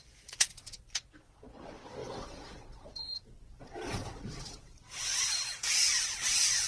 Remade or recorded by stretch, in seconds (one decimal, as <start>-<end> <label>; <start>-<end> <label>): 0.0-6.7 remade